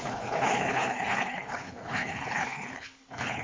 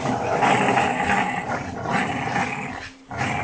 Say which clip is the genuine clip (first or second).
second